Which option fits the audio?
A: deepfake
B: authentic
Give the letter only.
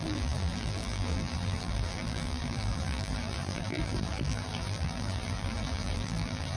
A